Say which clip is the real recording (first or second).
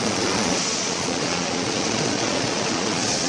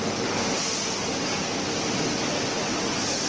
second